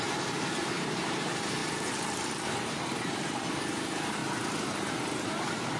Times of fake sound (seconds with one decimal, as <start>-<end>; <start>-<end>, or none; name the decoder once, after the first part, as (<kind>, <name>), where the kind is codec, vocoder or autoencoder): 0.0-5.8 (vocoder, BigVGAN v2)